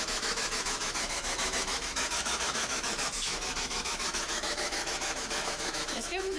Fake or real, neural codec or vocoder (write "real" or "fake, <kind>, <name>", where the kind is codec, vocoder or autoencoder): fake, autoencoder, DAC-VAE